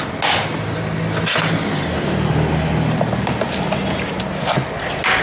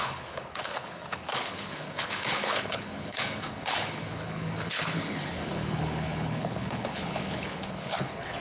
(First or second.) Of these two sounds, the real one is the first